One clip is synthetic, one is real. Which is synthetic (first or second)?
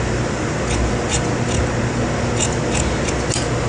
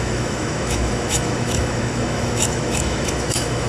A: second